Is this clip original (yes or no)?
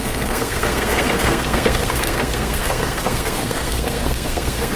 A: no